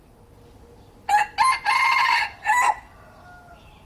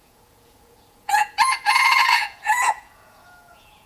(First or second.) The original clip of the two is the first